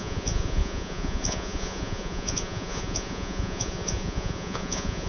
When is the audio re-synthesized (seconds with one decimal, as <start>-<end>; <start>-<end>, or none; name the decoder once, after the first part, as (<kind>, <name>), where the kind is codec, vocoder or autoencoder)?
0.0-5.1 (vocoder, Vocos)